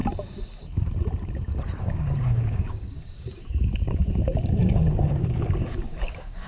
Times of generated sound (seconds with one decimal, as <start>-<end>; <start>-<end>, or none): 1.8-6.5